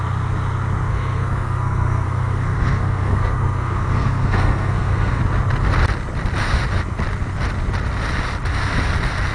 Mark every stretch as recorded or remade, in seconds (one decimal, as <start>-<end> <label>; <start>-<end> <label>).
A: 0.0-0.9 recorded; 0.9-5.2 remade; 5.2-9.3 recorded